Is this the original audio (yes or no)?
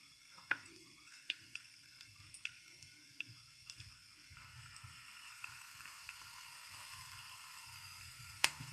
no